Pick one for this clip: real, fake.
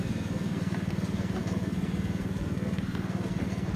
fake